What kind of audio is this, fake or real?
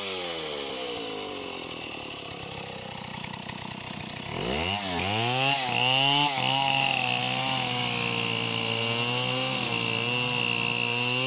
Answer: real